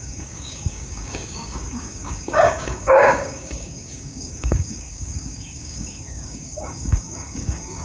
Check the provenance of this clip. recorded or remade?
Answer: remade